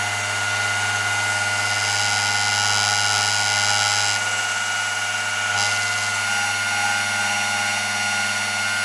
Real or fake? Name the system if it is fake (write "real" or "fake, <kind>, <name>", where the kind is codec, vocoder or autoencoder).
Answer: real